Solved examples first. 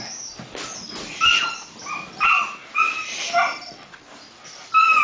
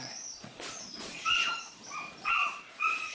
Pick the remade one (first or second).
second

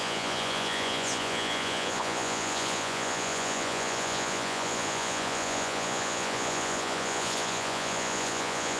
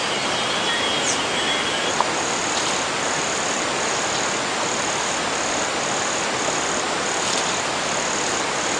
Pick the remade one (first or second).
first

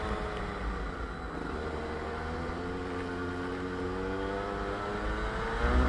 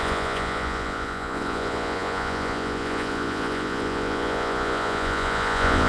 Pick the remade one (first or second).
second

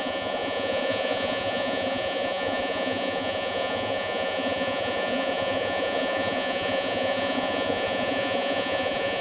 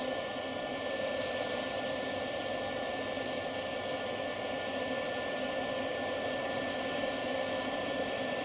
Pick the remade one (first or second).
first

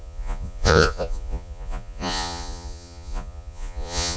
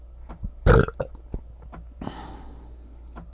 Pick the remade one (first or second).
first